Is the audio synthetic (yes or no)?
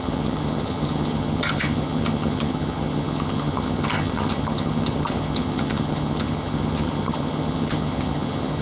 yes